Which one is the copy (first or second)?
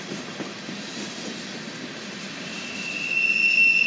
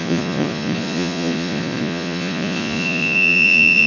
second